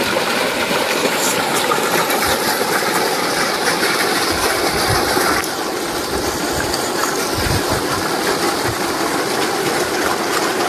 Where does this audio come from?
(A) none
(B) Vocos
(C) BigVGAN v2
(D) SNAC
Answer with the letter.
A